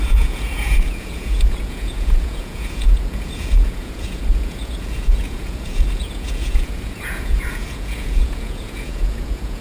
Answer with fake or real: fake